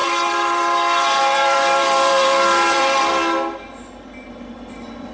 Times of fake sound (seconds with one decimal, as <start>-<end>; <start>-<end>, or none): 0.0-3.1

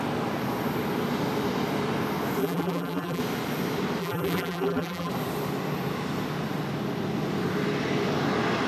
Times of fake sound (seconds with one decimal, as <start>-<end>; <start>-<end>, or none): 2.4-3.2; 4.0-5.1